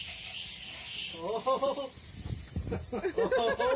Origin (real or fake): real